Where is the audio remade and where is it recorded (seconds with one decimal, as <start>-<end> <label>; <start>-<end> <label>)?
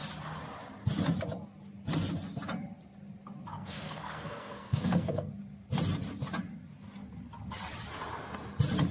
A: 0.0-3.5 recorded; 3.5-5.3 remade; 5.3-8.9 recorded